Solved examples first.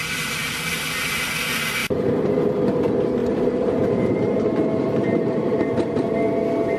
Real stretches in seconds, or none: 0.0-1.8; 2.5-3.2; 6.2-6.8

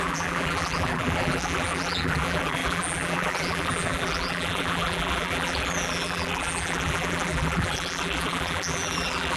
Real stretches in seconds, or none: none

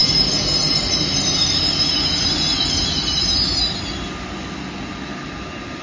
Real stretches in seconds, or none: 0.0-3.5; 4.1-5.8

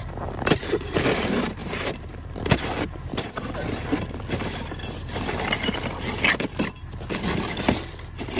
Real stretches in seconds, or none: 0.9-1.6; 3.4-8.4

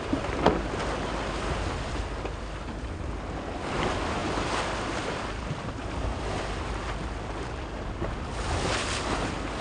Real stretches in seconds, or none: 0.0-4.2; 6.2-9.6